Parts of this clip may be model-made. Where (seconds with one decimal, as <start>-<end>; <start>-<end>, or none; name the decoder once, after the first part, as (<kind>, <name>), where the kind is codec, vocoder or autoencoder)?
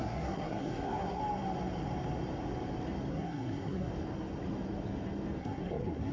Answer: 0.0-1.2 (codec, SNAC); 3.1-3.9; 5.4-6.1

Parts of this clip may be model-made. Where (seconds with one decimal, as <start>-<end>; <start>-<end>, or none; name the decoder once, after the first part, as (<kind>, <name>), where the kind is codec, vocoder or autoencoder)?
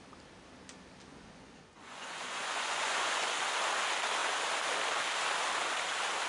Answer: 1.1-3.5 (vocoder, Vocos)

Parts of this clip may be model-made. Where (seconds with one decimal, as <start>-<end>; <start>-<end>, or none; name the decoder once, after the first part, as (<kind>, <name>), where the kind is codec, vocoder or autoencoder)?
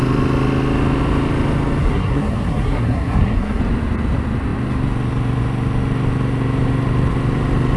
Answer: 1.8-3.6 (codec, SNAC)